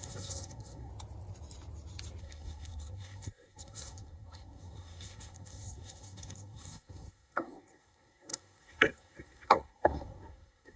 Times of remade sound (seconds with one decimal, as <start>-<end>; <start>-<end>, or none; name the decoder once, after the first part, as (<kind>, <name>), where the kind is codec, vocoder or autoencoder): 0.0-0.9 (codec, SNAC); 2.2-10.8